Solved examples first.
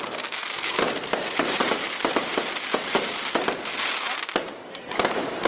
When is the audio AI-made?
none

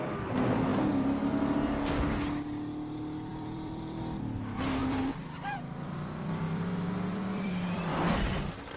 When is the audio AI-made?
3.3-4.0 (vocoder, BigVGAN v2); 4.8-8.4

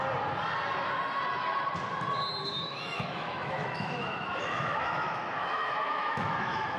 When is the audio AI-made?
2.4-6.8 (autoencoder, DAC-VAE)

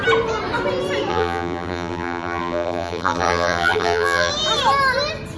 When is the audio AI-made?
1.1-4.3 (vocoder, BigVGAN v2)